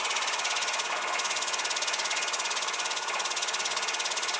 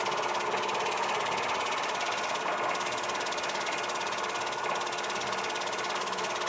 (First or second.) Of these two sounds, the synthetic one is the first